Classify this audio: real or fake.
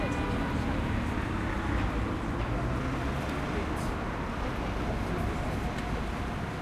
real